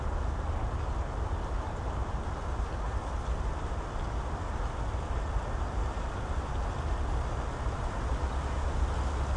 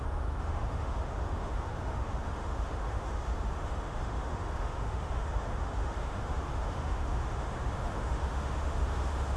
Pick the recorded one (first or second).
first